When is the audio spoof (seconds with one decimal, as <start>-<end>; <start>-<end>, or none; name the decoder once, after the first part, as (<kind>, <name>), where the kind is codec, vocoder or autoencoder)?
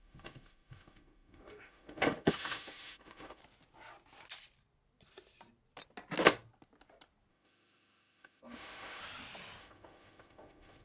0.0-3.4 (autoencoder, DAC-VAE); 7.3-9.0; 9.6-10.8